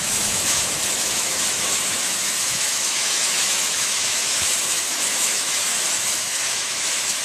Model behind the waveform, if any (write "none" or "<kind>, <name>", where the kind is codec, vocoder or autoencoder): autoencoder, DAC-VAE